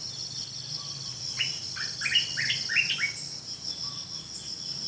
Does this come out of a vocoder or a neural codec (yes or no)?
no